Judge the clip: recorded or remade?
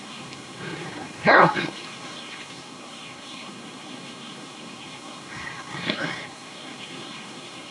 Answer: remade